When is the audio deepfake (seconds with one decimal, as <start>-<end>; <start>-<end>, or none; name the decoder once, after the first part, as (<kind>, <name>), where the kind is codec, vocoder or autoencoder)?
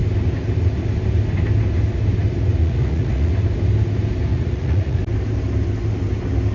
2.6-3.3 (vocoder, Vocos); 4.3-5.0